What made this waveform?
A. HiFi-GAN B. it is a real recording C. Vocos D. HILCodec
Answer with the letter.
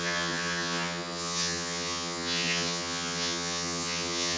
A